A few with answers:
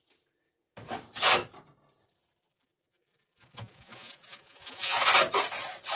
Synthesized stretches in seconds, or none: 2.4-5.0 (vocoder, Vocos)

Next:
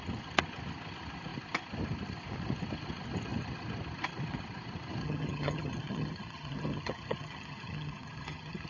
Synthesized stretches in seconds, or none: 5.0-8.7 (vocoder, HiFi-GAN)

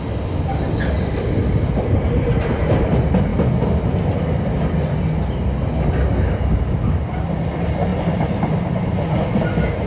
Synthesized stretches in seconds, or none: none

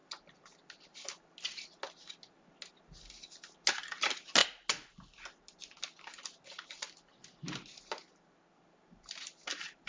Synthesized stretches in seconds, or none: none

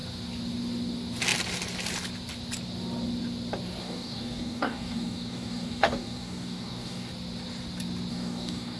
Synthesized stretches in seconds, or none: 3.8-7.1 (codec, DAC); 8.1-8.8

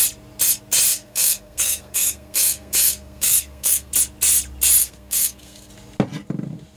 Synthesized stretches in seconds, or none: 0.9-3.9 (codec, SNAC); 4.8-5.7

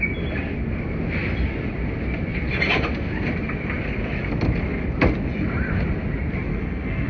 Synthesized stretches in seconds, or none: 6.5-7.1 (codec, SNAC)

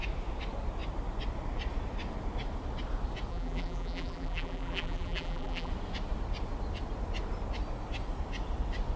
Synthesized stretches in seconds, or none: 3.3-5.7 (vocoder, BigVGAN v2)